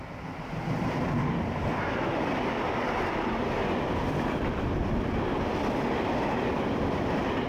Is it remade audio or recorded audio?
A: recorded